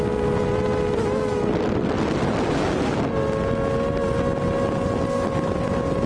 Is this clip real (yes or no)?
yes